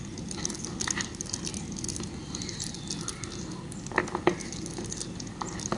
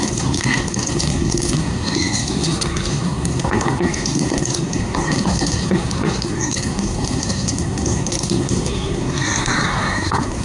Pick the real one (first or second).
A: first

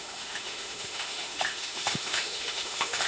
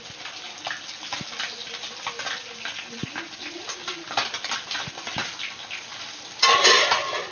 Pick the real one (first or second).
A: second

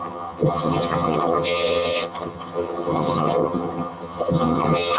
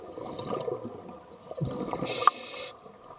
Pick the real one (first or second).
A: second